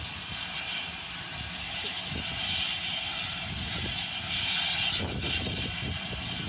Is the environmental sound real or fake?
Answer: real